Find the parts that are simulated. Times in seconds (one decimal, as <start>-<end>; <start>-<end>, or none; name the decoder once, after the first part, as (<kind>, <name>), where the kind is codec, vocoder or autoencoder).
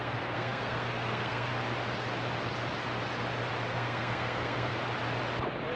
0.0-1.5 (codec, SNAC); 3.7-4.7